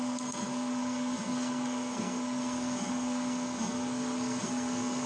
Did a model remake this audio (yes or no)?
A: yes